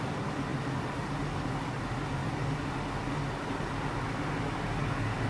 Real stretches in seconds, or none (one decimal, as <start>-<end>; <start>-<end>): 0.0-5.3